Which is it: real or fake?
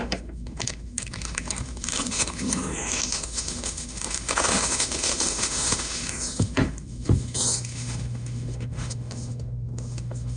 fake